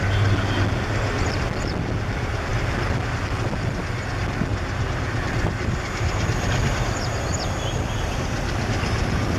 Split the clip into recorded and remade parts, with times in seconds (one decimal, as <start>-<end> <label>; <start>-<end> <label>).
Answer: 0.0-2.5 recorded; 2.5-3.0 remade; 3.0-4.5 recorded; 4.5-9.4 remade